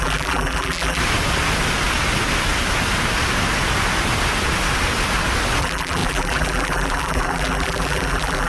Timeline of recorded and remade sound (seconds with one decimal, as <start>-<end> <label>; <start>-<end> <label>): 0.0-1.0 remade; 1.0-5.6 recorded; 5.6-8.5 remade